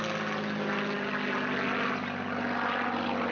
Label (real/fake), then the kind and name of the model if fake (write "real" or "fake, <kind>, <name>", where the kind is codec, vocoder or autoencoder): real